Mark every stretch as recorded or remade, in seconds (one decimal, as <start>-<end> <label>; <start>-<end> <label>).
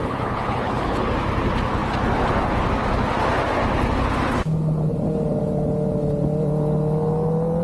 0.0-1.1 remade; 1.1-7.6 recorded